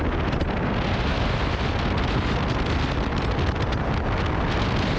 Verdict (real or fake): real